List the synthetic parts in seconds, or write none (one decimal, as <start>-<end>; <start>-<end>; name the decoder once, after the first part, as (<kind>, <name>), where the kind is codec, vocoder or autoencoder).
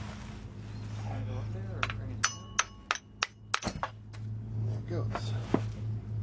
none